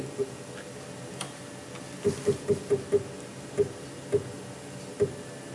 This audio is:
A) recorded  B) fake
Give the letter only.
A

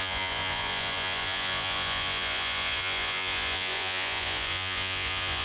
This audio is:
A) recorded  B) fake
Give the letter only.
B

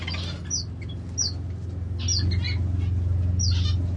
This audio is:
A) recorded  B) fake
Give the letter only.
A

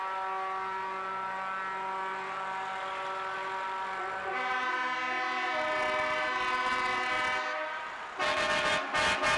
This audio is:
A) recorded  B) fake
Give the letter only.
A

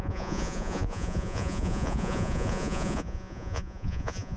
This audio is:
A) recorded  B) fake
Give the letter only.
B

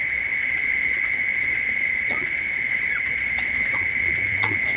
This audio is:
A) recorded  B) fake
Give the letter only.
B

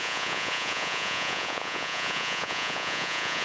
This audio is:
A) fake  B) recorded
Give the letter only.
A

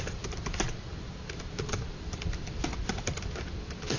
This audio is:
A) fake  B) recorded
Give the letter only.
B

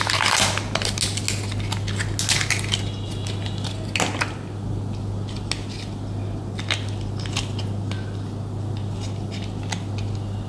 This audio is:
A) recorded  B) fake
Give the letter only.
A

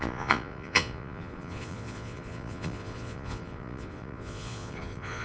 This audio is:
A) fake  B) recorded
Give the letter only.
A